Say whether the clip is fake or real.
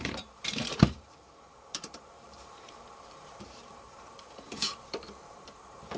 fake